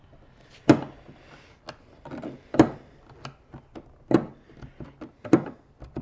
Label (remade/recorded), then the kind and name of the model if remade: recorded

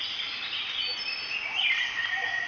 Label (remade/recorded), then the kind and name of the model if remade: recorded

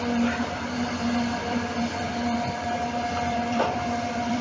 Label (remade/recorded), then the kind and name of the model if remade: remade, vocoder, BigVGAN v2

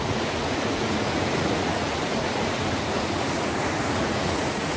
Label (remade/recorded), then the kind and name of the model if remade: remade, vocoder, Vocos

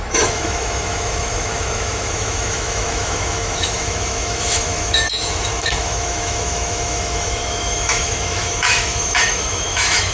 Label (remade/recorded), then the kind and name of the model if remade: remade, autoencoder, DAC-VAE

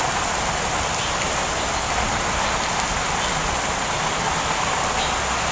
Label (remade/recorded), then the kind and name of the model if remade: recorded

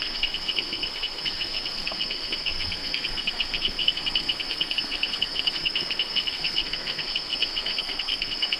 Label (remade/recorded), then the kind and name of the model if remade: remade, codec, SNAC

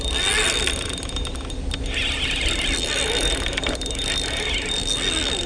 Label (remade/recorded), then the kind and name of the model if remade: recorded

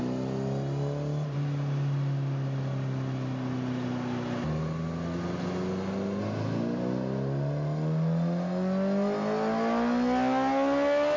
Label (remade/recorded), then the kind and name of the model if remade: recorded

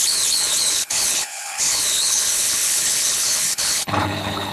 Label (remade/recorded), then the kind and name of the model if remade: remade, codec, HILCodec